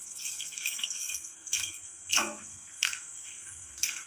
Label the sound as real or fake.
fake